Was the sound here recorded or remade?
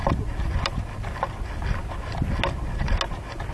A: recorded